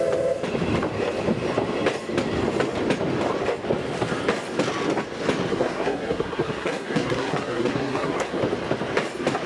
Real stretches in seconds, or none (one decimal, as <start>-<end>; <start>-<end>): 0.0-5.5; 8.4-9.5

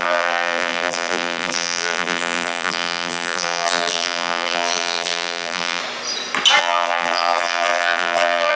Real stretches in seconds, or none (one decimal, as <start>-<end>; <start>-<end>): 5.8-6.6

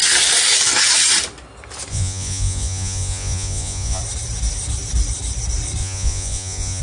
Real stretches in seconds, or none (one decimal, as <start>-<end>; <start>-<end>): 0.0-1.9; 4.0-5.8

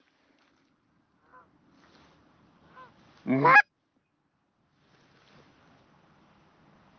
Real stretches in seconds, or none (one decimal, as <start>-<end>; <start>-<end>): 0.0-7.0

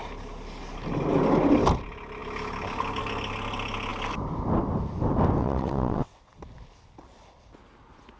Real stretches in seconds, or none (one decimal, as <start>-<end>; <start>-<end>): 0.0-5.4; 6.4-8.2

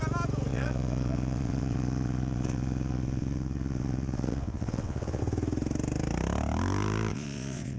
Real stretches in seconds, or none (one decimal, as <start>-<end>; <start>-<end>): 0.0-0.5; 5.2-7.1